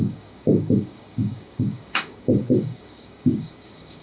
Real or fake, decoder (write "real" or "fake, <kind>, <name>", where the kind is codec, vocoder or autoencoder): fake, codec, DAC